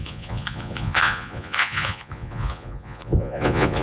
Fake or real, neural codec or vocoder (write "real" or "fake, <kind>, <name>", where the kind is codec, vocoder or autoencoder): fake, vocoder, Vocos